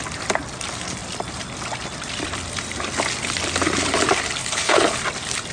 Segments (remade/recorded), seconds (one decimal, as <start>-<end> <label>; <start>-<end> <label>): 0.0-4.4 recorded; 4.4-5.0 remade; 5.0-5.5 recorded